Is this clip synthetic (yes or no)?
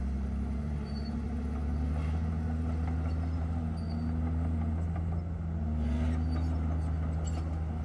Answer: no